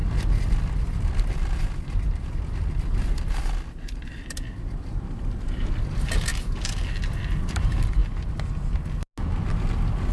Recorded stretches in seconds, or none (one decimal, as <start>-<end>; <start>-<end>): 6.3-7.4; 8.0-9.5